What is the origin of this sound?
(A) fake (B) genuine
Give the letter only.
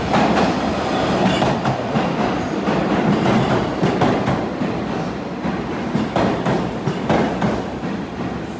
B